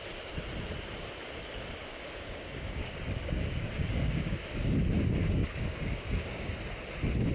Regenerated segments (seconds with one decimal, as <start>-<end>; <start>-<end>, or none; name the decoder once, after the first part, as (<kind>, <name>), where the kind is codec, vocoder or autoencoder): 1.9-4.8 (codec, DAC); 5.2-6.5